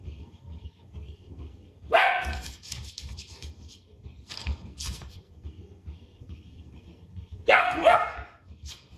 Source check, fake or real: fake